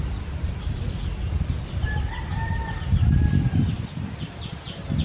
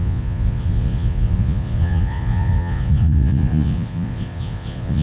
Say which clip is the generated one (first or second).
second